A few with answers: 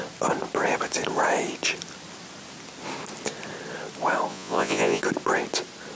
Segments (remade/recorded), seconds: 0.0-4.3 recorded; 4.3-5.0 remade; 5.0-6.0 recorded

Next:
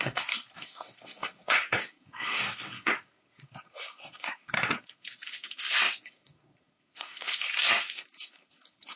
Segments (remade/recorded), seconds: 0.0-9.0 remade

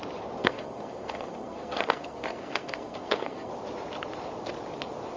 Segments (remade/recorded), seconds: 0.0-0.4 recorded; 0.4-3.5 remade; 3.5-5.2 recorded

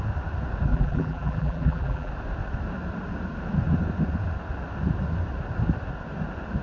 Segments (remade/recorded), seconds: 0.0-0.7 recorded; 0.7-2.1 remade; 2.1-6.6 recorded

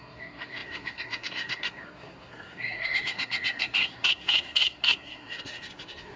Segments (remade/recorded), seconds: 0.0-6.2 remade